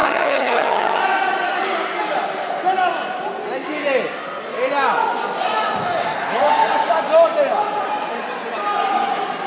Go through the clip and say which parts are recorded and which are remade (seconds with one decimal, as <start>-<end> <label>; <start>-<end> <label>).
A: 0.0-1.0 remade; 1.0-9.5 recorded